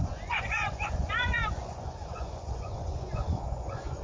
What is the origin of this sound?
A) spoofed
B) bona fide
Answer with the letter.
A